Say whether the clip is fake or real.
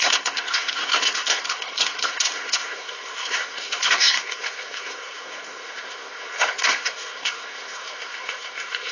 fake